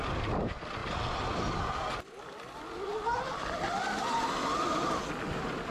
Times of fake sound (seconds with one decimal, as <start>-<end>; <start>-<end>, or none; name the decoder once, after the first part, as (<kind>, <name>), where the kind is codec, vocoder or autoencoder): none